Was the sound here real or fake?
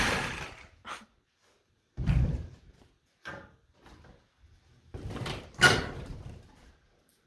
fake